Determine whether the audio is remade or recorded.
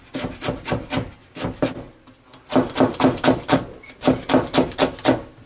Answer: recorded